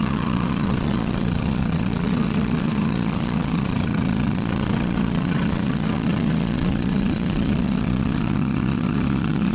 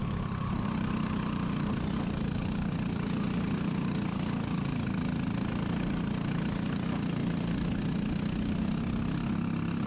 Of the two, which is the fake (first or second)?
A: first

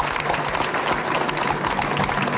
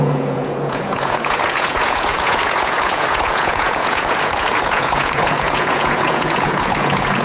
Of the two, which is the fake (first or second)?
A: second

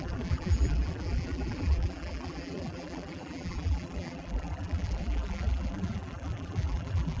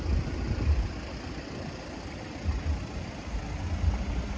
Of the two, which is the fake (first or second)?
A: first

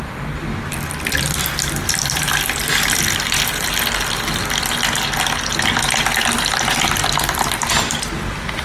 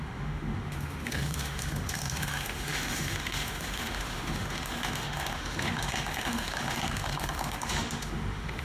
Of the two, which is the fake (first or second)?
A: second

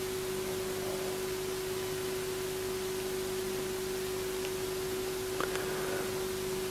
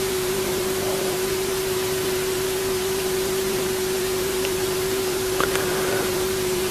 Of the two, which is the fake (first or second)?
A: second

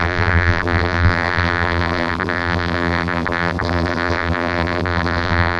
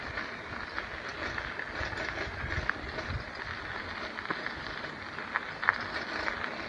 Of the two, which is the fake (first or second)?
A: first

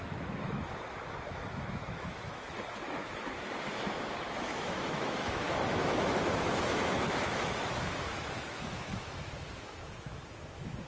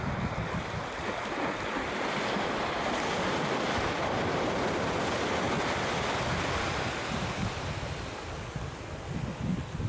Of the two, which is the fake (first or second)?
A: first